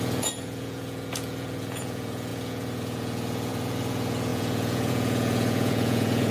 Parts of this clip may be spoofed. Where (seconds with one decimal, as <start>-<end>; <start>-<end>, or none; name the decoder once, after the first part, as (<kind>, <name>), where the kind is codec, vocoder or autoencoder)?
0.0-6.3 (vocoder, Vocos)